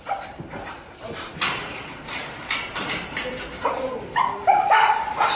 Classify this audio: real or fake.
fake